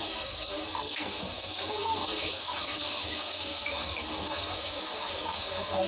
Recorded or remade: remade